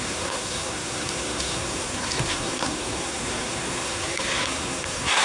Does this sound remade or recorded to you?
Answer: remade